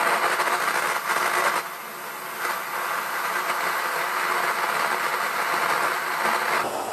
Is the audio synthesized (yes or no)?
no